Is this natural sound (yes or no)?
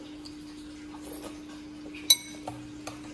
yes